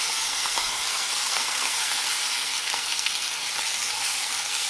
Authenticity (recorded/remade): remade